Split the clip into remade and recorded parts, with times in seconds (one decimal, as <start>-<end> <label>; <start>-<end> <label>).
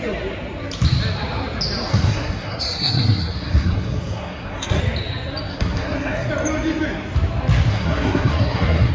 0.0-1.9 recorded; 1.9-4.8 remade; 4.8-5.5 recorded; 5.5-6.3 remade; 6.3-7.7 recorded; 7.7-8.9 remade